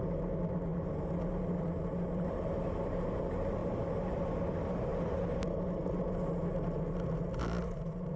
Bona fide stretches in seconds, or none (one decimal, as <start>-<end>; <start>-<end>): 0.0-8.2